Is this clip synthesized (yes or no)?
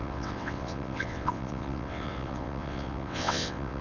yes